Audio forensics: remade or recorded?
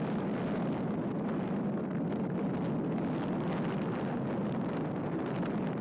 recorded